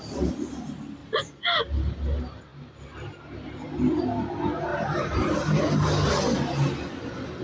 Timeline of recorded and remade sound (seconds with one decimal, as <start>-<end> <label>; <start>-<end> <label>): 0.0-1.0 recorded; 1.0-1.6 remade; 1.6-2.5 recorded; 2.5-4.0 remade; 4.0-4.7 recorded; 4.7-5.7 remade; 5.7-7.4 recorded